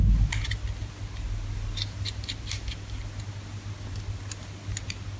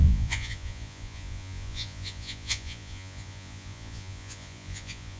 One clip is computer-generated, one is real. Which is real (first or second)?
first